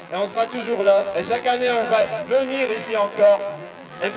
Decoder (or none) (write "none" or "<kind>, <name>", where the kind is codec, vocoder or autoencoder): vocoder, BigVGAN v2